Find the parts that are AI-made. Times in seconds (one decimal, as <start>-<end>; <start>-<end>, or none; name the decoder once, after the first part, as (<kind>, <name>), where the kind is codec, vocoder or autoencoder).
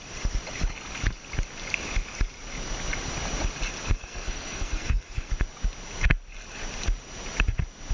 3.9-5.3 (codec, SNAC)